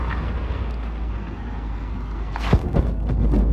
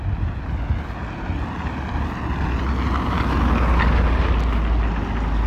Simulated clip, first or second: first